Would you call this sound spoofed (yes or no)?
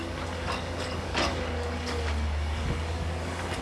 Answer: yes